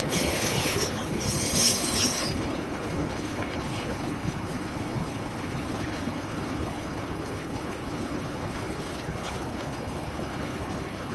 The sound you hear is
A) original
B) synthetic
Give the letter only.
B